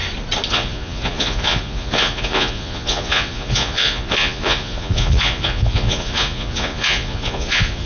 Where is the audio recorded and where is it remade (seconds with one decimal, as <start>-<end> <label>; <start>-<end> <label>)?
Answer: 0.0-0.5 recorded; 0.5-7.9 remade